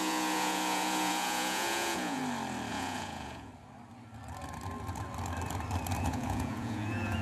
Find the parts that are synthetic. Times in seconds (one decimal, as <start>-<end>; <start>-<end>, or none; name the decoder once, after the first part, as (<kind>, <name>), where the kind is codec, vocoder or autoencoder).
0.0-2.2 (vocoder, Vocos); 2.7-3.5; 6.0-7.2